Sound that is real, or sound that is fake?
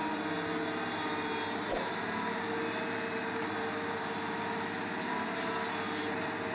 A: real